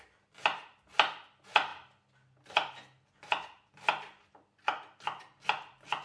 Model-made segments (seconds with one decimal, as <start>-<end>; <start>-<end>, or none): none